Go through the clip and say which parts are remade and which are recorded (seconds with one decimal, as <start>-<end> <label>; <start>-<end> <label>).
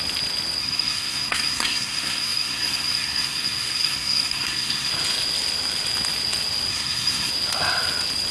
0.0-0.6 recorded; 0.6-4.9 remade; 4.9-6.7 recorded; 6.7-7.3 remade; 7.3-8.3 recorded